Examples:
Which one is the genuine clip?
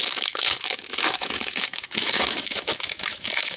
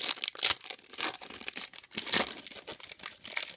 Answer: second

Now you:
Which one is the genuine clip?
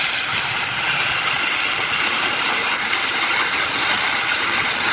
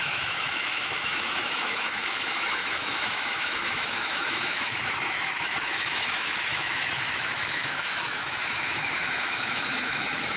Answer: first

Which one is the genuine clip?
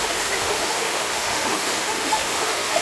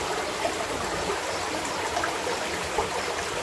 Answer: second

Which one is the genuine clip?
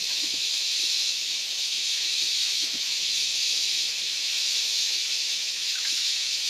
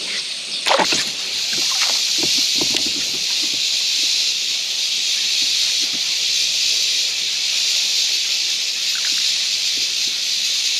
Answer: second